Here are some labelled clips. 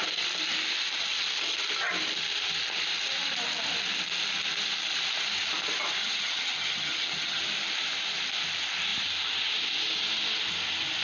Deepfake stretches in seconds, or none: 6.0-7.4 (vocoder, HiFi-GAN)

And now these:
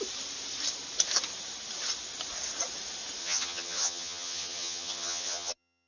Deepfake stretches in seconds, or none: 3.2-5.9 (vocoder, HiFi-GAN)

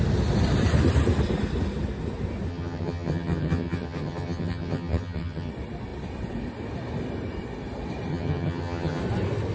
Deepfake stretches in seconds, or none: 2.5-5.5 (vocoder, HiFi-GAN); 8.1-9.0

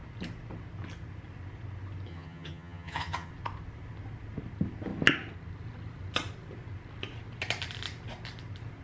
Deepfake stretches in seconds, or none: 2.1-3.3 (vocoder, HiFi-GAN)

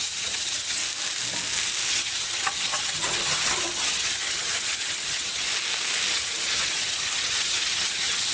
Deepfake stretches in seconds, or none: 0.0-0.8 (vocoder, HiFi-GAN); 1.9-5.5; 6.1-8.3

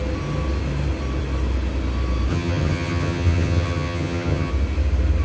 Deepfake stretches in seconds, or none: 2.3-4.5 (vocoder, HiFi-GAN)

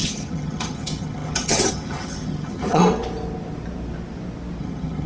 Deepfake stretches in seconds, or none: 0.0-2.8 (vocoder, HiFi-GAN); 4.6-5.1